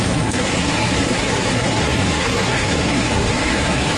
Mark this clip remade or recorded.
remade